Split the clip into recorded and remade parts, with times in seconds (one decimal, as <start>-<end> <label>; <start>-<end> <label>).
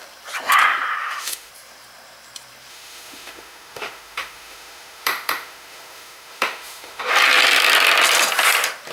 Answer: 0.0-1.0 recorded; 1.0-1.5 remade; 1.5-2.7 recorded; 2.7-7.1 remade; 7.1-8.9 recorded